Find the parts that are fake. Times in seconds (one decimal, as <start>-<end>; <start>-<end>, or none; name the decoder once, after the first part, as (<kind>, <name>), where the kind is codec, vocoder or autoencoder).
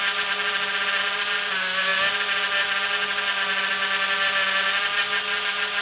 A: none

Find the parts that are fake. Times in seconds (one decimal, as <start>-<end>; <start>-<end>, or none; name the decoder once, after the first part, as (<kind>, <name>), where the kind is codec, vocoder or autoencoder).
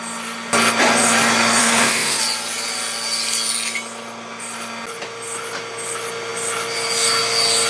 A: 1.6-2.2 (autoencoder, DAC-VAE)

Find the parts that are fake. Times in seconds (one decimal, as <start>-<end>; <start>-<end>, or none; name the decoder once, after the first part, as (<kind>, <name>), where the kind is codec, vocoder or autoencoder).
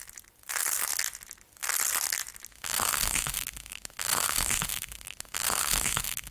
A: 2.5-6.3 (autoencoder, DAC-VAE)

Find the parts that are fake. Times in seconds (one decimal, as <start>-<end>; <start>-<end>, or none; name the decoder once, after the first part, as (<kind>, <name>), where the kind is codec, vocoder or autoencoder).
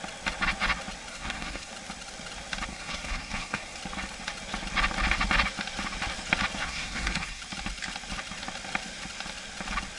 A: 1.1-1.7 (codec, SNAC); 2.7-3.8; 6.6-7.4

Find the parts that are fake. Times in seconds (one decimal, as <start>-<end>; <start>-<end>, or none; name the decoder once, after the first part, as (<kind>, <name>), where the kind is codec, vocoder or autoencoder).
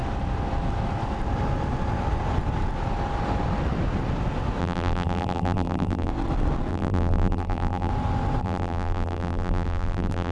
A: 4.6-6.1 (vocoder, BigVGAN v2); 6.7-7.9; 8.4-10.3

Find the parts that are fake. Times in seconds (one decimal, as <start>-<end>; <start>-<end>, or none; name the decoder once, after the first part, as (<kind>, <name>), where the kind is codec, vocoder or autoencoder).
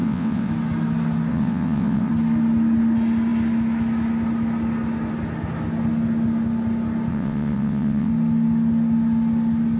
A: 0.0-0.5 (vocoder, WaveNeXt); 1.3-2.1; 7.1-8.1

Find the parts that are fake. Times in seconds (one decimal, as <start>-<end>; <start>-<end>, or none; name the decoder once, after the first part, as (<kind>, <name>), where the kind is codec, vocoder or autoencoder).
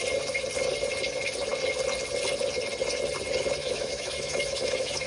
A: 3.6-5.1 (autoencoder, DAC-VAE)